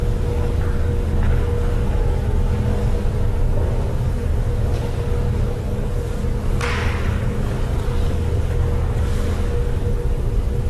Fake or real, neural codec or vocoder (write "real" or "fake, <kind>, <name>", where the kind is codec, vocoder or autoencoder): fake, codec, DAC